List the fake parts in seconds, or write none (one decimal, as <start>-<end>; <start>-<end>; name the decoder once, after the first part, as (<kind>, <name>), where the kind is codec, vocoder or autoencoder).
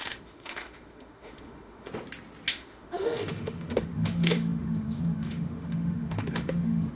0.0-1.9 (autoencoder, DAC-VAE); 2.5-7.0